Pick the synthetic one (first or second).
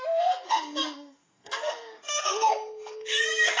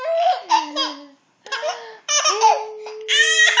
first